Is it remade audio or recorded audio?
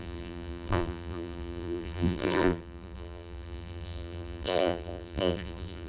remade